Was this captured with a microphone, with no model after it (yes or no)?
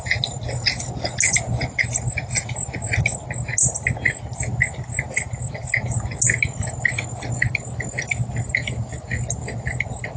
yes